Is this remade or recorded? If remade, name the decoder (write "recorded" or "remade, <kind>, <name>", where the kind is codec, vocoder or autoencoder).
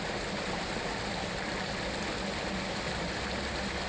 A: recorded